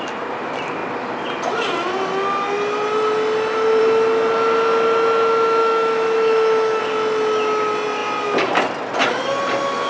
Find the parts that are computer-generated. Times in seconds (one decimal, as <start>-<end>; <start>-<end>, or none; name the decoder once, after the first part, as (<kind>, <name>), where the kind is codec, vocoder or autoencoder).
5.6-6.8 (autoencoder, DAC-VAE)